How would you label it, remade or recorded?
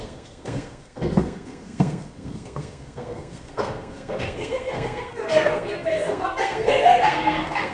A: remade